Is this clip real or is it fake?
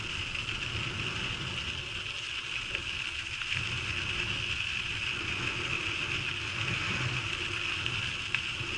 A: real